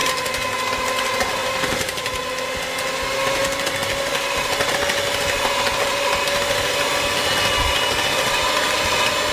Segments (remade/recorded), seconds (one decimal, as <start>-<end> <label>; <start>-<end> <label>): 0.0-0.7 remade; 0.7-1.4 recorded; 1.4-2.3 remade; 2.3-9.3 recorded